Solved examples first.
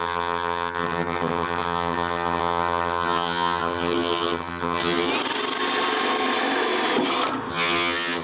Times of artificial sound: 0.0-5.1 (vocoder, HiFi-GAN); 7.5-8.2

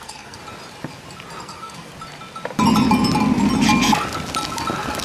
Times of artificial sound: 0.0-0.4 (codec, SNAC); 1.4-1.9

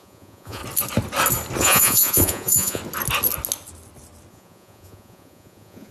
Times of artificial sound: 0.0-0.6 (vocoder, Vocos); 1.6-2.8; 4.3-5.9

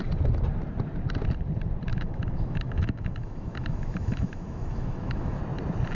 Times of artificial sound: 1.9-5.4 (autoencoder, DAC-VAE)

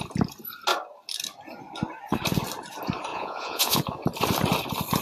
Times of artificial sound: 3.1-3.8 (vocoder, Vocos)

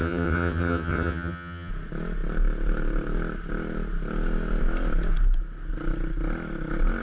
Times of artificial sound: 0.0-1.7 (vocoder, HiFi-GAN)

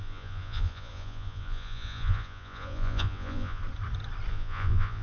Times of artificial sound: 0.0-3.6 (vocoder, Vocos); 4.3-5.0